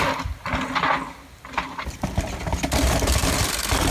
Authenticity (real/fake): real